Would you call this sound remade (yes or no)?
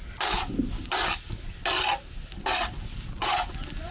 no